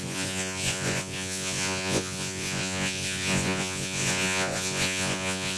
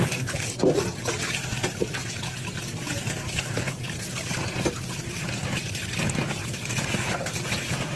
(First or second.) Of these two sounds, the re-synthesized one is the first